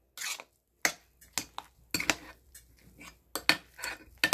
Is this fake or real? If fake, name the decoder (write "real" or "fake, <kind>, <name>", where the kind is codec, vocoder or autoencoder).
real